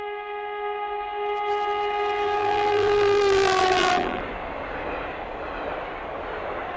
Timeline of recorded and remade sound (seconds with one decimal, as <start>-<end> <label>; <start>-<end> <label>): 0.0-2.4 recorded; 2.4-4.2 remade; 4.2-6.8 recorded